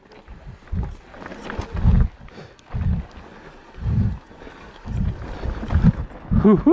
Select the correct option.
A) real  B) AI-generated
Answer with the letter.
A